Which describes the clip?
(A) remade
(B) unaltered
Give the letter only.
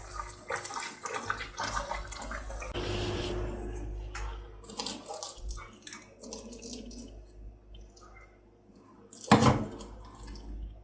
B